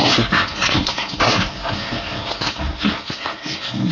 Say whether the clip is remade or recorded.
remade